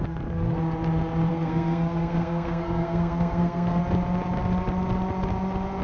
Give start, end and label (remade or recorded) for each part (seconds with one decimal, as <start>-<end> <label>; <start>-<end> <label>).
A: 0.0-1.3 recorded; 1.3-3.8 remade; 3.8-5.8 recorded